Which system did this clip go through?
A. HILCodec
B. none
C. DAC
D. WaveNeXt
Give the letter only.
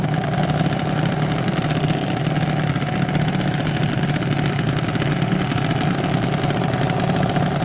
B